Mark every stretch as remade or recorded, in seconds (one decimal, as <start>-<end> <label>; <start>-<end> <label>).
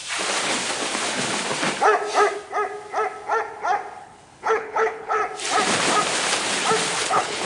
0.0-4.0 recorded; 4.0-5.2 remade; 5.2-7.1 recorded; 7.1-7.5 remade